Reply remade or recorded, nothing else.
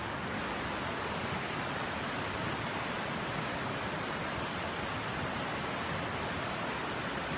recorded